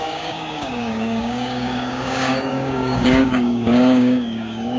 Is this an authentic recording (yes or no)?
no